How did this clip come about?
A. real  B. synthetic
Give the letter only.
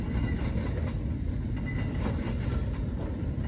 A